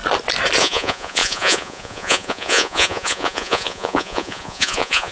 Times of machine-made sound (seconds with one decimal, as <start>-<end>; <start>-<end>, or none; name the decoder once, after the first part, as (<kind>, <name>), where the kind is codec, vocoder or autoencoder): 0.6-5.1 (vocoder, Vocos)